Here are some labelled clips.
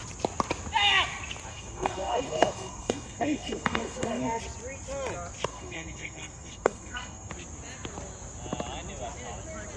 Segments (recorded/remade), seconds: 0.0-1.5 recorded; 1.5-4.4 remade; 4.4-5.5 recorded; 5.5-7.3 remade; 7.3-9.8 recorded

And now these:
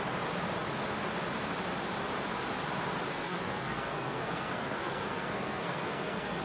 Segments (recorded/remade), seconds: 0.0-3.1 recorded; 3.1-6.4 remade

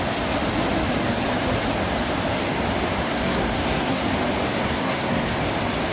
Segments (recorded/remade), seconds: 0.0-3.0 recorded; 3.0-4.0 remade; 4.0-4.6 recorded; 4.6-5.4 remade; 5.4-5.9 recorded

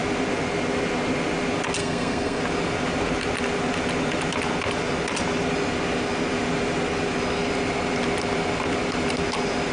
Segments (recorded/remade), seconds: 0.0-1.8 recorded; 1.8-2.4 remade; 2.4-9.7 recorded

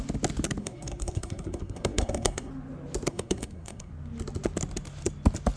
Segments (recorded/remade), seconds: 0.0-0.6 recorded; 0.6-2.5 remade; 2.5-3.1 recorded; 3.1-3.9 remade; 3.9-5.6 recorded

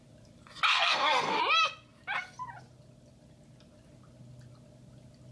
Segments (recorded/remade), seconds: 0.0-0.7 recorded; 0.7-1.4 remade; 1.4-5.3 recorded

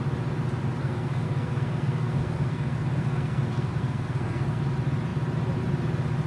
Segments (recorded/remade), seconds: 0.0-0.8 recorded; 0.8-4.6 remade; 4.6-6.3 recorded

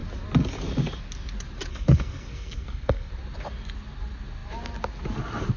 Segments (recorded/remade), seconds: 0.0-1.7 recorded; 1.7-3.1 remade; 3.1-5.6 recorded